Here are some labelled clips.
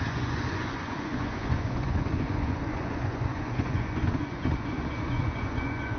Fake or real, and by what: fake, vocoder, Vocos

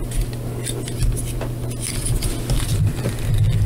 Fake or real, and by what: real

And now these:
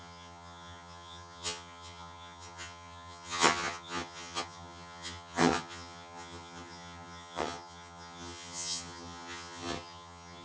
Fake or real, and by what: fake, vocoder, HiFi-GAN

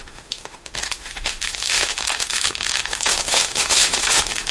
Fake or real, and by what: fake, autoencoder, DAC-VAE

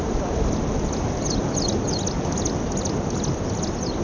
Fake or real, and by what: real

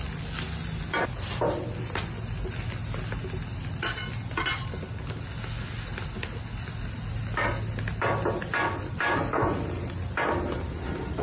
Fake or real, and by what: real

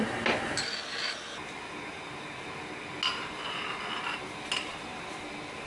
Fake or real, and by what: real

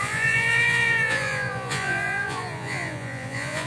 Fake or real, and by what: fake, vocoder, Vocos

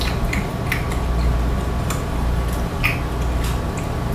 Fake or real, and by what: real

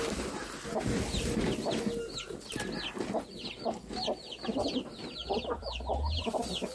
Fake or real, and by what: real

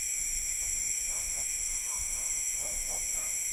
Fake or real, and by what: fake, autoencoder, DAC-VAE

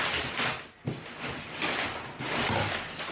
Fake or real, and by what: real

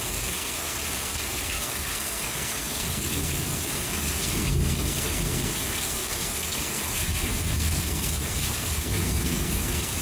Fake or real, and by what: fake, codec, SNAC